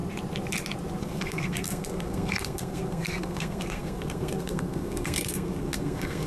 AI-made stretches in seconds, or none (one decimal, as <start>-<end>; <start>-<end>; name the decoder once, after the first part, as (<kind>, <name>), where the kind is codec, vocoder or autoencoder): 1.0-6.3 (codec, SNAC)